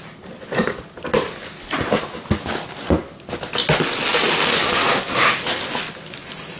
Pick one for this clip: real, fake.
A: real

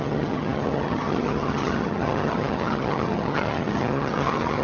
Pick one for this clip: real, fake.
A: fake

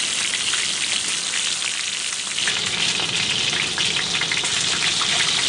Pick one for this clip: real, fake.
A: real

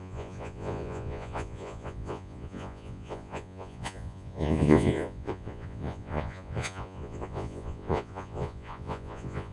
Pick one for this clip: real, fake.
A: fake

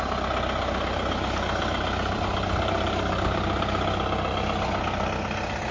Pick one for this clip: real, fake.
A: real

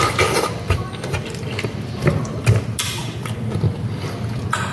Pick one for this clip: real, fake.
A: fake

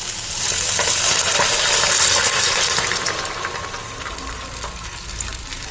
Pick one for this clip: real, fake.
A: real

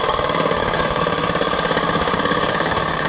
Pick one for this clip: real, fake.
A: fake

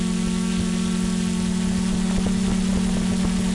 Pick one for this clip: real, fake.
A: real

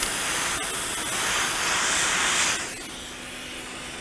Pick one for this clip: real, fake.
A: real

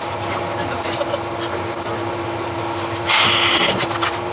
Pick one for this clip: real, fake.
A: real